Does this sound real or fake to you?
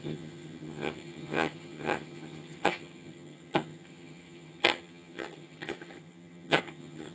fake